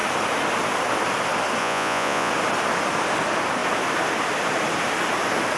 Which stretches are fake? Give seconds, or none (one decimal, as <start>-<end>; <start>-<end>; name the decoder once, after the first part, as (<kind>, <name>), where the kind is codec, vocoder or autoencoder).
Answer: 1.6-2.3 (vocoder, Vocos)